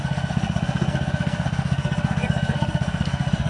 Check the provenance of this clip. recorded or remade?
remade